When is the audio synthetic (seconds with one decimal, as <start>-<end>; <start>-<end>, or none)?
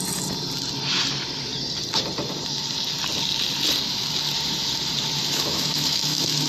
5.2-6.5